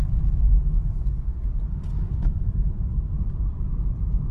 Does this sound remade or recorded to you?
recorded